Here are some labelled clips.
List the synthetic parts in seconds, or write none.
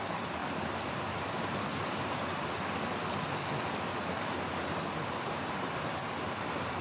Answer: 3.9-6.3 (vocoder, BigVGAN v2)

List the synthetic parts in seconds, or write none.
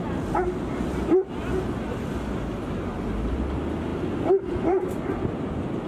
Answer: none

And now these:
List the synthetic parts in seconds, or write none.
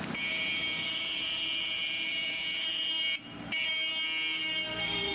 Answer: 0.6-3.7 (vocoder, BigVGAN v2); 4.4-5.1